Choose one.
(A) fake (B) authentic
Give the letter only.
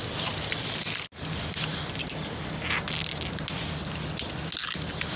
B